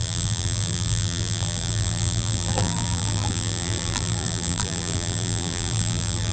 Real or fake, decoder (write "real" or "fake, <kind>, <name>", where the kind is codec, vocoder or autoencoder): fake, vocoder, BigVGAN v2